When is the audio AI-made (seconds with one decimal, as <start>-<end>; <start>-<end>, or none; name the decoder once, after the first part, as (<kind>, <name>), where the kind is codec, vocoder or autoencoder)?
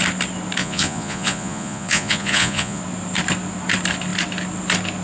0.6-2.8 (vocoder, Vocos)